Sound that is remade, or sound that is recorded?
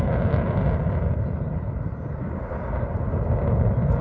recorded